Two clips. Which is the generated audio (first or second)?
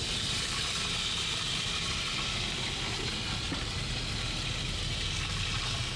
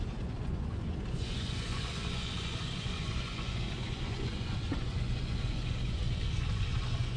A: second